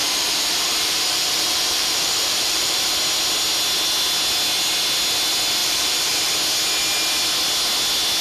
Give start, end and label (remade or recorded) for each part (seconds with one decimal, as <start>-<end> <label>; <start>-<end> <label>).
0.0-2.9 remade; 2.9-5.6 recorded; 5.6-6.3 remade; 6.3-8.2 recorded